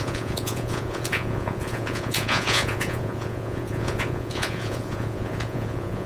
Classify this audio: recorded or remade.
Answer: remade